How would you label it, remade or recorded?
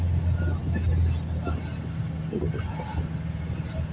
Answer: recorded